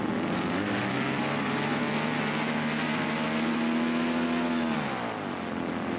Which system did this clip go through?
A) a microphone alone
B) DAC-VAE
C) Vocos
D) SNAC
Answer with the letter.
A